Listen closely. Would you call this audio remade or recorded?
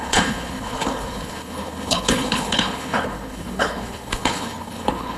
remade